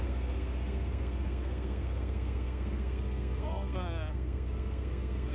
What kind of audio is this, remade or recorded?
remade